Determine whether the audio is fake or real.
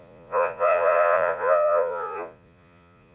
fake